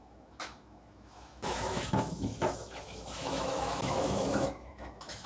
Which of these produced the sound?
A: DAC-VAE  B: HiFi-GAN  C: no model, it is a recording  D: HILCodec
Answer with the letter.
A